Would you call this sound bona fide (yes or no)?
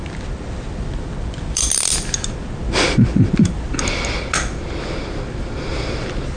no